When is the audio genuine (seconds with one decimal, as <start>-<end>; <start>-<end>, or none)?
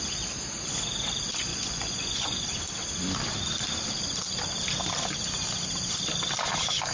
0.0-1.5; 2.4-6.9